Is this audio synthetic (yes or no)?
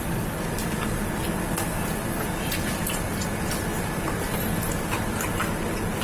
no